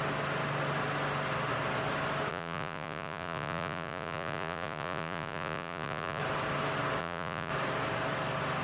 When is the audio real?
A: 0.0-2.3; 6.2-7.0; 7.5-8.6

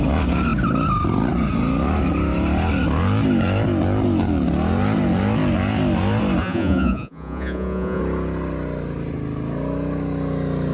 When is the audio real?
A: 0.0-6.4; 8.0-10.7

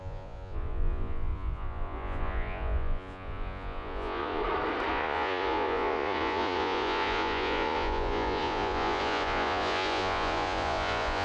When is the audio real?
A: 4.4-4.9

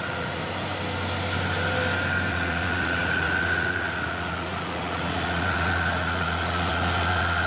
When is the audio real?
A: 0.4-2.3

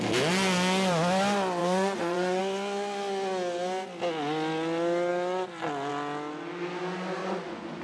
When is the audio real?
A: 0.0-1.6; 2.4-7.2

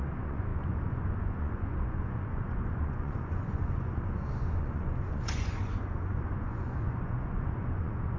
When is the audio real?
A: none